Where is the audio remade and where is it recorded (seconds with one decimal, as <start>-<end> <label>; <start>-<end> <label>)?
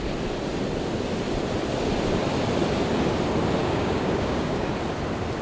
0.0-3.6 recorded; 3.6-4.7 remade; 4.7-5.4 recorded